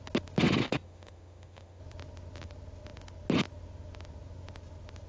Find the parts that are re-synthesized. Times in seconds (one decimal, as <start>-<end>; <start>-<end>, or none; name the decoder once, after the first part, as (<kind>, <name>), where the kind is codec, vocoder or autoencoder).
0.6-1.8 (autoencoder, DAC-VAE)